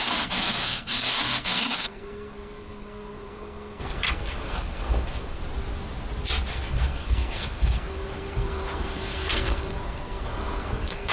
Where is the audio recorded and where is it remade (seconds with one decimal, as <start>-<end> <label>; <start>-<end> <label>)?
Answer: 0.0-5.4 remade; 5.4-6.5 recorded; 6.5-11.1 remade